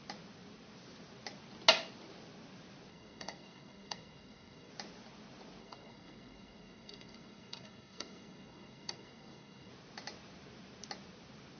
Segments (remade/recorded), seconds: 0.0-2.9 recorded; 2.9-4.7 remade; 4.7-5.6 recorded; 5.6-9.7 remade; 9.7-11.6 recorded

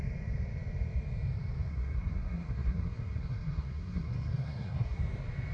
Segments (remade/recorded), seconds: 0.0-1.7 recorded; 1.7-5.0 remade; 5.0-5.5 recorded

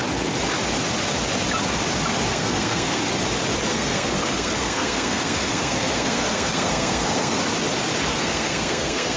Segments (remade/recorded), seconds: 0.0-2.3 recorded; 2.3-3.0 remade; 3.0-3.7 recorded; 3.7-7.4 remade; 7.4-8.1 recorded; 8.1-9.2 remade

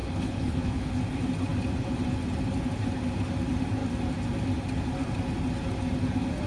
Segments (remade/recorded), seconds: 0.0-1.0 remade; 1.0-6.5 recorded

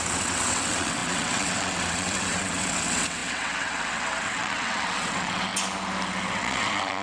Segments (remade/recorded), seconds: 0.0-5.5 remade; 5.5-6.3 recorded; 6.3-7.0 remade